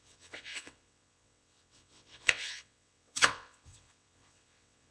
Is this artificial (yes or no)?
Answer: yes